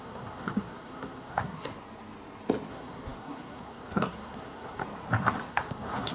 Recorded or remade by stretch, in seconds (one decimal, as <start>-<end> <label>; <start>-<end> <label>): 0.0-1.7 remade; 1.7-2.7 recorded; 2.7-4.8 remade; 4.8-5.5 recorded; 5.5-6.1 remade